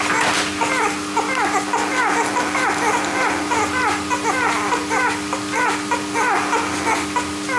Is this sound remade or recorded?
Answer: recorded